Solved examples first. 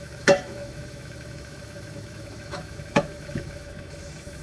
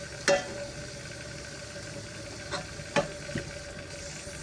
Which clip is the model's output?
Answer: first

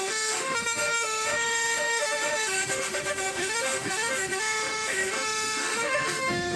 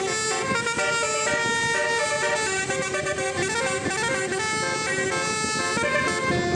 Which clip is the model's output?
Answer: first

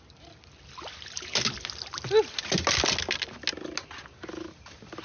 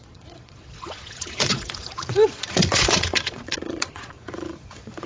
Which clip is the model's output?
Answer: second